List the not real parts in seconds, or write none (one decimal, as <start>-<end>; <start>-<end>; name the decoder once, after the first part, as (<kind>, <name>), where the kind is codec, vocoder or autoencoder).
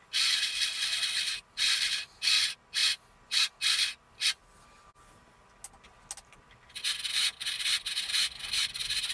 none